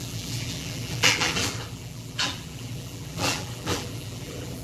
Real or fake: fake